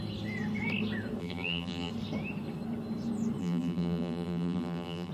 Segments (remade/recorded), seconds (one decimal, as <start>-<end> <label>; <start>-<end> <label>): 0.0-1.2 recorded; 1.2-1.9 remade; 1.9-3.4 recorded; 3.4-5.1 remade